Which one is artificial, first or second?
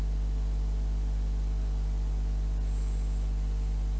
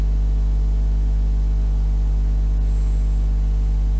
second